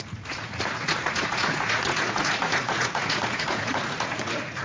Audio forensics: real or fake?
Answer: fake